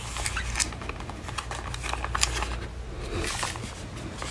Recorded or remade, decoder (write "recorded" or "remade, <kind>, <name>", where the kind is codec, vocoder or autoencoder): recorded